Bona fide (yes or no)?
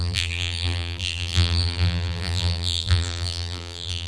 no